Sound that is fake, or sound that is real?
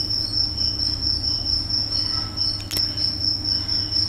real